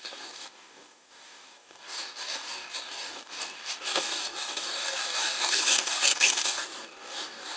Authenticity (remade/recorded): remade